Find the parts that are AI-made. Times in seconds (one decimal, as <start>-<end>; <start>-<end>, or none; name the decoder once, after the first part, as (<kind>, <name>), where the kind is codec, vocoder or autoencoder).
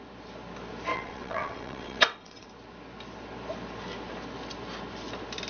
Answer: 0.9-2.5 (vocoder, WaveNeXt)